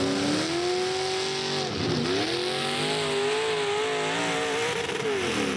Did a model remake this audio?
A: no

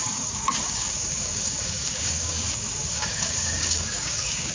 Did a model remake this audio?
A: yes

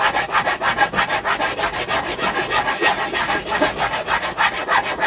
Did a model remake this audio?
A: no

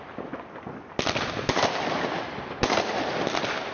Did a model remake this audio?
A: no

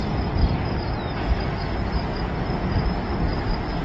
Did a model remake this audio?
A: no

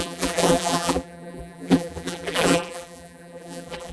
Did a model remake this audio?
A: yes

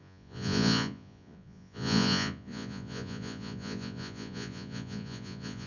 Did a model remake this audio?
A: yes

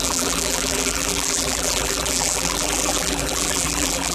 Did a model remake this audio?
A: yes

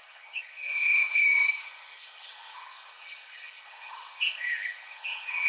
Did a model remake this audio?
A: yes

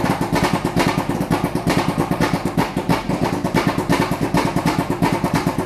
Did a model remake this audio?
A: yes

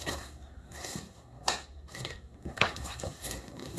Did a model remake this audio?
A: yes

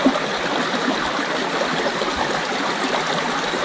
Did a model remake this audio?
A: no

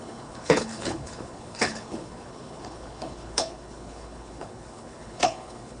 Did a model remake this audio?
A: yes